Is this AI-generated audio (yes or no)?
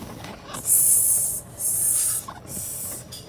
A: no